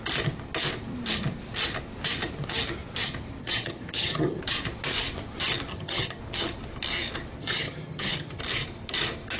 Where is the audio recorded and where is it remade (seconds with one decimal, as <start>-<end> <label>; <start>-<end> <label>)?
0.0-3.4 recorded; 3.4-4.4 remade; 4.4-5.7 recorded; 5.7-6.2 remade; 6.2-7.4 recorded; 7.4-8.4 remade; 8.4-9.4 recorded